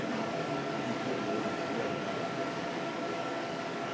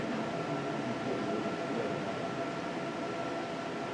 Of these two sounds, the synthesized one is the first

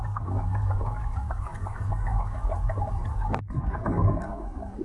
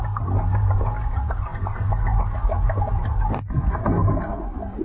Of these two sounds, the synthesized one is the first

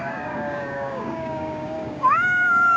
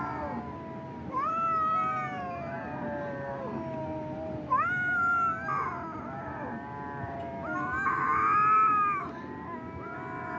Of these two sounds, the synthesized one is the first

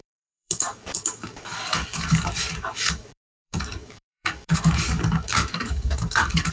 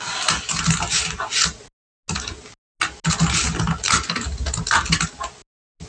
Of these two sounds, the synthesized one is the first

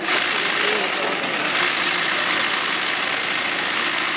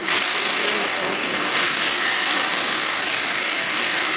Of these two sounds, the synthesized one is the second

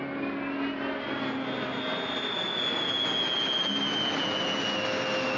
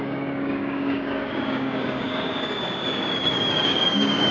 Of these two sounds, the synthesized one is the second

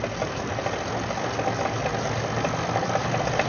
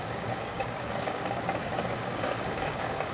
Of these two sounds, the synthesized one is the second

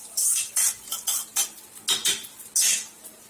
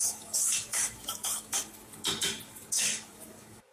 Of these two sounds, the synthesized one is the second